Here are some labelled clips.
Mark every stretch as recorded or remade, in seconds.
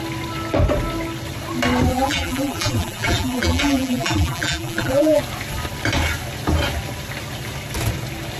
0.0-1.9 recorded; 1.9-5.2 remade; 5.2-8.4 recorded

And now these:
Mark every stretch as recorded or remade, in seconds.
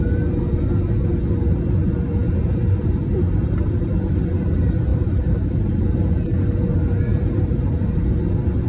0.0-3.6 recorded; 3.6-4.3 remade; 4.3-4.9 recorded; 4.9-5.8 remade; 5.8-7.1 recorded; 7.1-8.0 remade; 8.0-8.7 recorded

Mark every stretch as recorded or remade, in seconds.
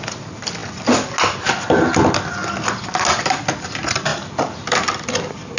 0.0-4.1 recorded; 4.1-5.1 remade; 5.1-5.6 recorded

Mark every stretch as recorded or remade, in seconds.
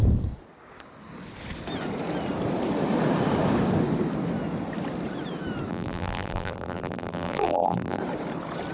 0.0-5.7 recorded; 5.7-8.0 remade; 8.0-8.7 recorded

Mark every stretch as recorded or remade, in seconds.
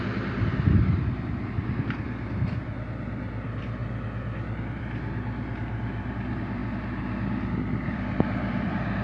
0.0-3.8 remade; 3.8-4.6 recorded; 4.6-6.6 remade; 6.6-7.3 recorded; 7.3-9.0 remade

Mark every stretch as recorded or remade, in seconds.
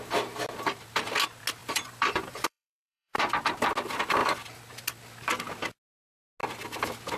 0.0-1.6 recorded; 1.6-3.3 remade; 3.3-7.2 recorded